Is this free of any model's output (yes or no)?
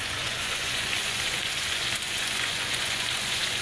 no